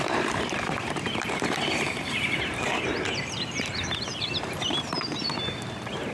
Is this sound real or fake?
fake